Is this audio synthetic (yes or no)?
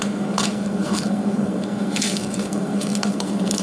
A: yes